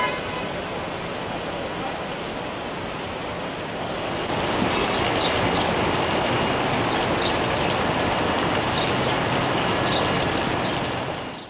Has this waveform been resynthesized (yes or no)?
no